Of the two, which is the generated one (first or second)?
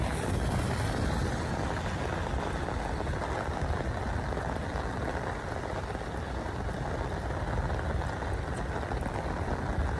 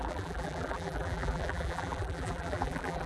second